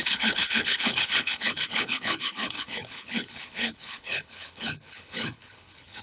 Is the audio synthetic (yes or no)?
yes